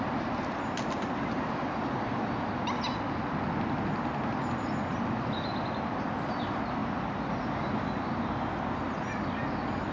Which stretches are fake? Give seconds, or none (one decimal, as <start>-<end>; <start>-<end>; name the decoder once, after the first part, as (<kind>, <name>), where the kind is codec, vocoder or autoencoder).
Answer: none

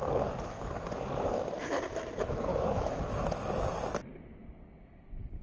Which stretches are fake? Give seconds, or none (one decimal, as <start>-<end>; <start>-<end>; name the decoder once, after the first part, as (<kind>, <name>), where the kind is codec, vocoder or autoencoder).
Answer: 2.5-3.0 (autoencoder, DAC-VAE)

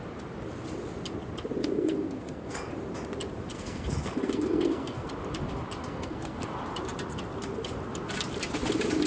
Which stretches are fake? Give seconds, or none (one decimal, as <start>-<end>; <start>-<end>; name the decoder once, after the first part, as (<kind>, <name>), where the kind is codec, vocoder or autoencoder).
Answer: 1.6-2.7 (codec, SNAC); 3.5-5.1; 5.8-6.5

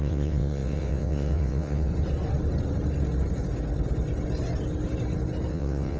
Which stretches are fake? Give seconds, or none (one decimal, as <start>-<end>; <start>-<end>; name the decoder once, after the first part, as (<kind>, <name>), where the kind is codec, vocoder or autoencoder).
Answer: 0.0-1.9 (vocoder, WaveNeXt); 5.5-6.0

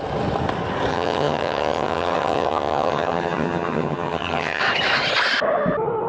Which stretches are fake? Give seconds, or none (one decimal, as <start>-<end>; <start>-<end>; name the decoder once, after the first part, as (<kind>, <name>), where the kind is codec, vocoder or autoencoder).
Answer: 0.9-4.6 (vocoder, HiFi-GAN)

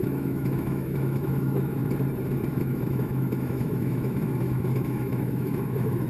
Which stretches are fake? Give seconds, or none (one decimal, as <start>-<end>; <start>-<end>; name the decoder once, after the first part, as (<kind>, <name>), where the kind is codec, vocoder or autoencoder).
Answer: 0.0-1.8 (autoencoder, DAC-VAE); 2.5-6.1

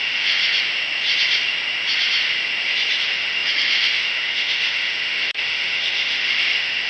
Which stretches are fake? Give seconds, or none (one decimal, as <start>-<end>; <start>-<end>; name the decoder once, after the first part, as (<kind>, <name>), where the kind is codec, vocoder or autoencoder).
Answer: 0.0-0.4 (autoencoder, DAC-VAE); 3.0-6.9

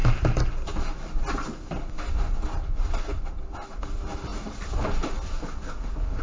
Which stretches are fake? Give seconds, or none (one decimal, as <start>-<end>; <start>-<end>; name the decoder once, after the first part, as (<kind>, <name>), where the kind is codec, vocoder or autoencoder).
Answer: none